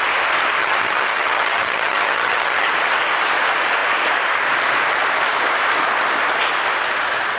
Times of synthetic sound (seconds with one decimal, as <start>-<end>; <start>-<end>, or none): 0.6-2.7